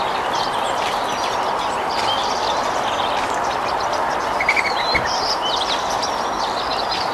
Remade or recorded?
remade